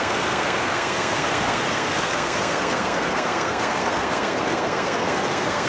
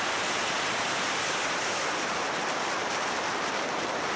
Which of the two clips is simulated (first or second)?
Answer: first